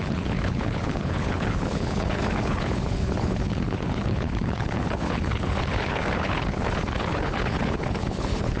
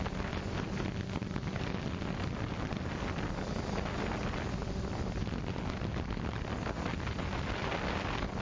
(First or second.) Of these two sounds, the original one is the second